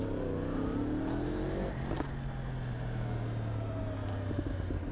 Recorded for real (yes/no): yes